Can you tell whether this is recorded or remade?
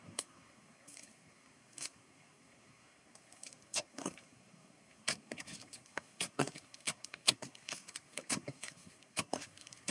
remade